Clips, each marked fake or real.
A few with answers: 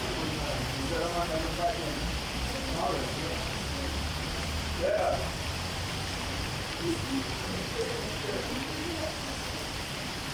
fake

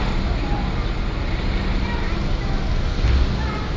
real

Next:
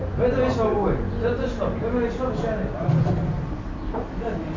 real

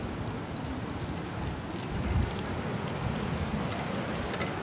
real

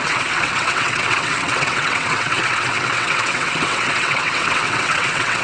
fake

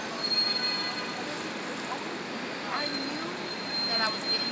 real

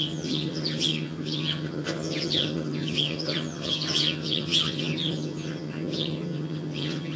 fake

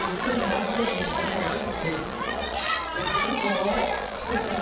fake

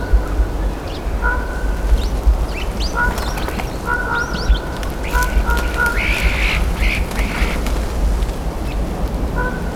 real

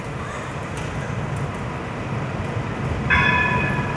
real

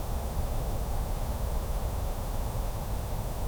fake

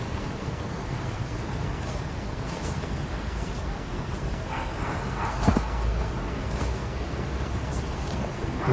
fake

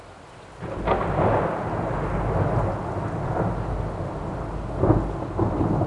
real